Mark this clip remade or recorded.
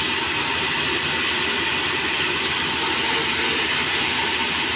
recorded